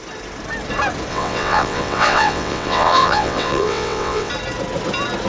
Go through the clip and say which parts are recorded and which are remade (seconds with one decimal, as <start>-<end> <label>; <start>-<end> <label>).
0.0-1.1 recorded; 1.1-4.3 remade; 4.3-5.3 recorded